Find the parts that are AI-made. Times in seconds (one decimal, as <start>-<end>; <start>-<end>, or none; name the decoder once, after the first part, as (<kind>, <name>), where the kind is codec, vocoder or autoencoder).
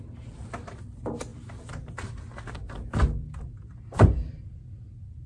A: none